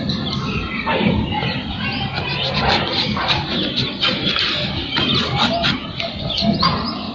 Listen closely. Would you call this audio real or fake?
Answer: real